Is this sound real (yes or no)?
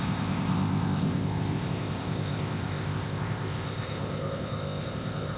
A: no